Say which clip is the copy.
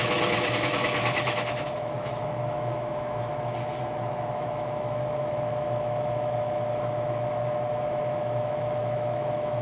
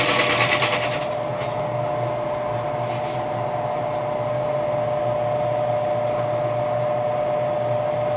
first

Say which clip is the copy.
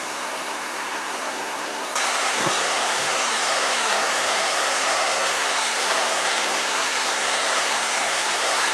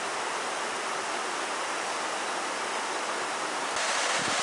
first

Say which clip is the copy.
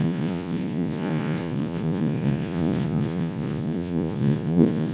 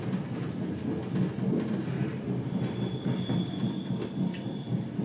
first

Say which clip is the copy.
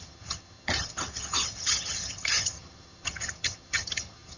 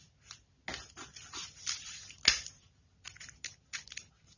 first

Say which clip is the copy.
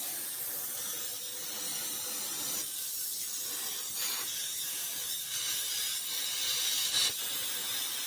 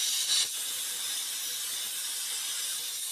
first